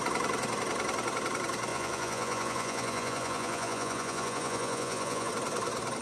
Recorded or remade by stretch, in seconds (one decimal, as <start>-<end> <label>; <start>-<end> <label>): 0.0-1.7 recorded; 1.7-5.3 remade; 5.3-6.0 recorded